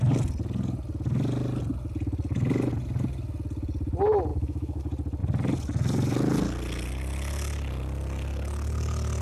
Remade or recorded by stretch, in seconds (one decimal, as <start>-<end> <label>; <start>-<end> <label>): 0.0-4.3 recorded; 4.3-4.8 remade; 4.8-9.2 recorded